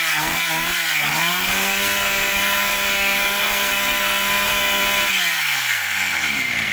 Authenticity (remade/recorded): remade